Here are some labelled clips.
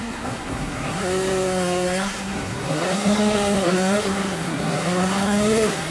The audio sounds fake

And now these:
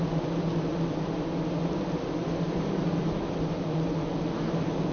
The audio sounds real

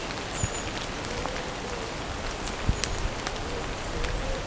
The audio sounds real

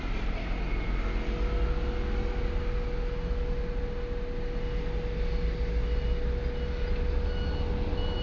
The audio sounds real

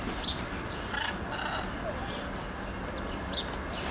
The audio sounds real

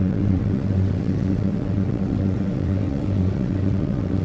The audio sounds fake